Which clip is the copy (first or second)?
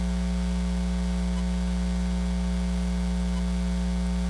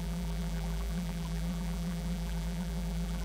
second